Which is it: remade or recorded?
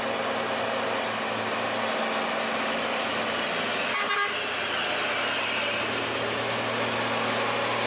recorded